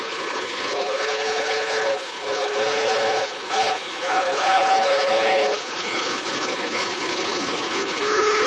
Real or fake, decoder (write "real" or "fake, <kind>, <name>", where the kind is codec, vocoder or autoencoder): fake, codec, HILCodec